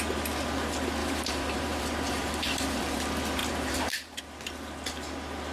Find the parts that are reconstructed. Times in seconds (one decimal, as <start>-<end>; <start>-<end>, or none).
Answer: 1.0-3.0; 3.4-4.2